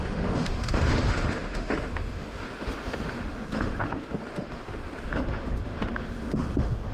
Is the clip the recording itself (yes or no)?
no